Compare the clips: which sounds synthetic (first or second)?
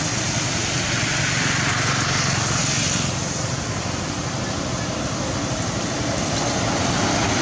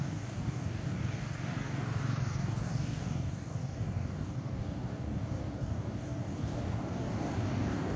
second